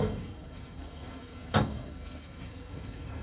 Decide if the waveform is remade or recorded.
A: remade